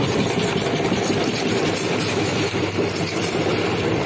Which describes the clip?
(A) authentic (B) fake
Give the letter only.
B